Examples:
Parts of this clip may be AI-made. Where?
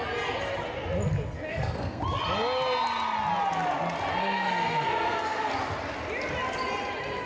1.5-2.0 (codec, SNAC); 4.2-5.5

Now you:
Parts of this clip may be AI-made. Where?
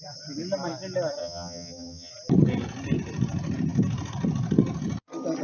1.2-2.1 (vocoder, HiFi-GAN)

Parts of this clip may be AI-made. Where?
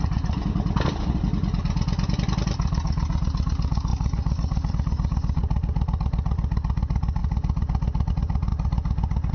none